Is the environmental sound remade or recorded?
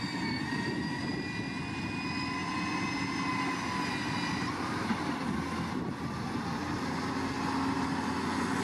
recorded